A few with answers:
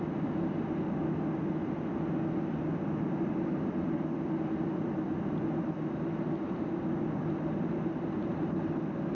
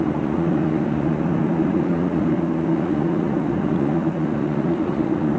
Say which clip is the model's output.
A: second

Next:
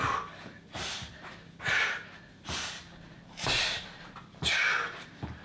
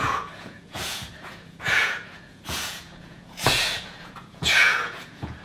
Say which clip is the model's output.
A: second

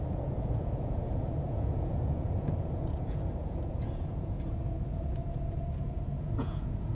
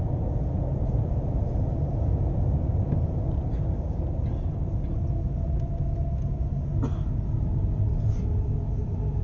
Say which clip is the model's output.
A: first